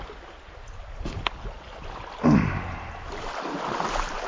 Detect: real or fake real